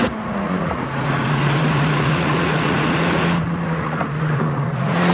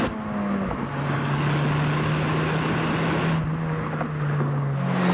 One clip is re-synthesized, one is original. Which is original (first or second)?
second